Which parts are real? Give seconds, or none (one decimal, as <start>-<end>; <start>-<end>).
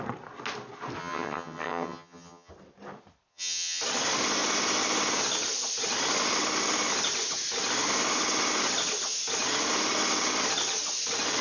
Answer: 0.0-1.0; 2.5-3.3; 3.8-11.4